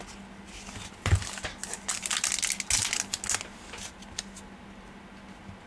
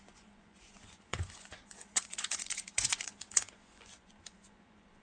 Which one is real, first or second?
first